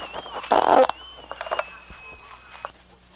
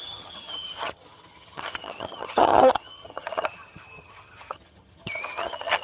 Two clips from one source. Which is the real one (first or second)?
first